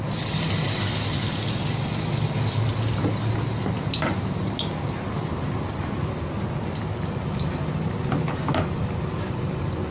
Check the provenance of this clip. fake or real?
real